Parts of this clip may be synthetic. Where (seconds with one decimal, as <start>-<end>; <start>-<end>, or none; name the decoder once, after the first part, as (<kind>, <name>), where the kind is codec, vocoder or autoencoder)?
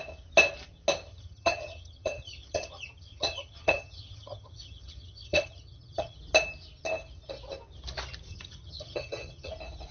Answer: 1.1-6.2 (vocoder, HiFi-GAN); 8.3-9.5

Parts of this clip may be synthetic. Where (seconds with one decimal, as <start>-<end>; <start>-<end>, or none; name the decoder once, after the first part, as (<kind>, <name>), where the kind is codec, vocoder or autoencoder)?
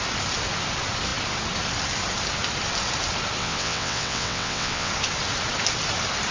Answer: 3.4-4.9 (vocoder, WaveNeXt)